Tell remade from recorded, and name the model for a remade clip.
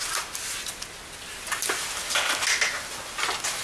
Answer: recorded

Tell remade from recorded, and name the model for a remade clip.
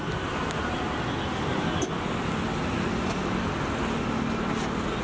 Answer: recorded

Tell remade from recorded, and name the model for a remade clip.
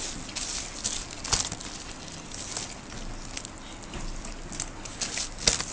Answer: recorded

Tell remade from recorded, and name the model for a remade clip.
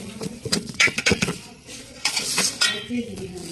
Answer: remade, vocoder, Vocos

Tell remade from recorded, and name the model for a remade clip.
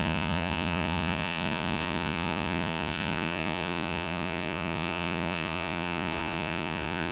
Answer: remade, vocoder, Vocos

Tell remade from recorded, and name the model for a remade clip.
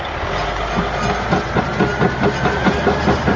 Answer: recorded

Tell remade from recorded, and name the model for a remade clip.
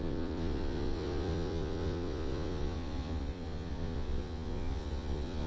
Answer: remade, vocoder, Vocos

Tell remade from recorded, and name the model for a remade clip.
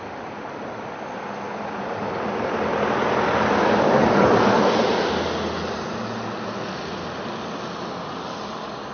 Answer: recorded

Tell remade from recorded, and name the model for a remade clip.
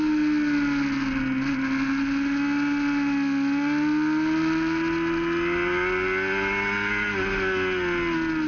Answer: recorded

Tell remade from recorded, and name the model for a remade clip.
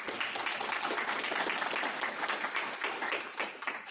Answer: recorded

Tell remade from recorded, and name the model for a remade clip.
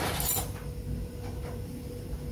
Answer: recorded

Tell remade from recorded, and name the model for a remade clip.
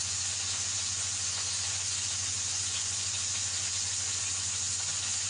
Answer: remade, vocoder, Vocos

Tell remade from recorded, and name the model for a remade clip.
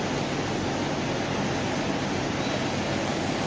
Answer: recorded